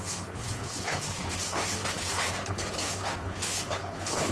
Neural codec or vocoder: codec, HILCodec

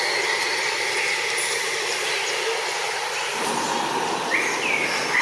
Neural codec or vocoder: none